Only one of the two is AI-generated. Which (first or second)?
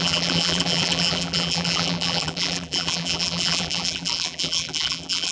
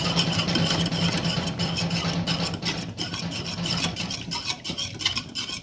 first